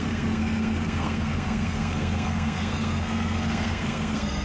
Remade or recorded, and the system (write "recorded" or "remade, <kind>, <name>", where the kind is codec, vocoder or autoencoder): remade, codec, SNAC